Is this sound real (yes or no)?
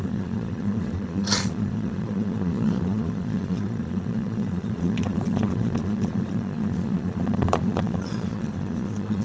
no